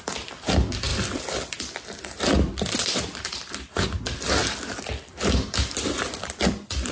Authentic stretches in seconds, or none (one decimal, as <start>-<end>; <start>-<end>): 0.0-6.9

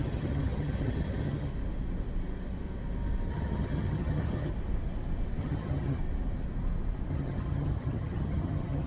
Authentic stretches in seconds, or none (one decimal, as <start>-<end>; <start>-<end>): 1.5-3.3; 4.5-5.4; 6.0-7.1

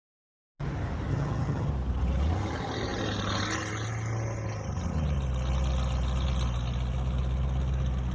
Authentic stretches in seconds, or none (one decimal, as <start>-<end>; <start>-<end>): 0.0-1.1; 1.7-8.1

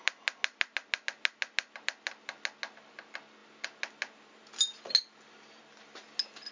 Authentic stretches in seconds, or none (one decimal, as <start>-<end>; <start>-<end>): 0.0-6.5

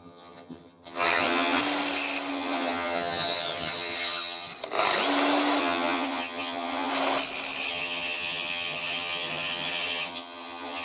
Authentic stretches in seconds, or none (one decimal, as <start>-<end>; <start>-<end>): 1.6-2.3; 4.5-5.6; 6.9-7.7